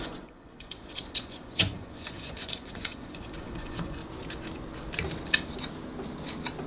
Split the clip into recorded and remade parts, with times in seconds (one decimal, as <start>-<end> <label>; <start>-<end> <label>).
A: 0.0-4.0 remade; 4.0-6.7 recorded